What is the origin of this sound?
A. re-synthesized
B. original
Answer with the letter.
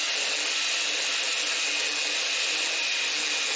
B